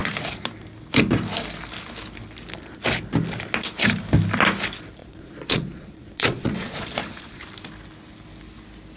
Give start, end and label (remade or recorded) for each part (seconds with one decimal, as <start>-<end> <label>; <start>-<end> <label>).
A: 0.0-5.0 recorded; 5.0-7.4 remade; 7.4-9.0 recorded